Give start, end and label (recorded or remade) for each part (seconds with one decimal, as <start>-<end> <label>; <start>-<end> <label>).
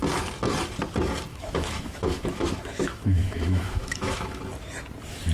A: 0.0-1.3 recorded; 1.3-4.4 remade; 4.4-5.3 recorded